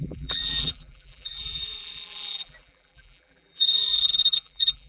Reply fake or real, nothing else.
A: fake